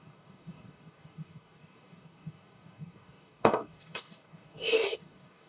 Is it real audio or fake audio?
fake